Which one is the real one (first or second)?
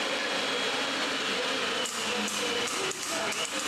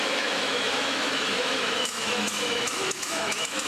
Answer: first